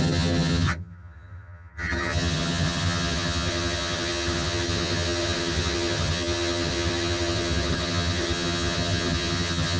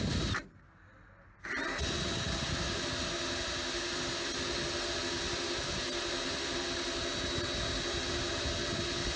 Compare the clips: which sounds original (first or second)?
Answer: second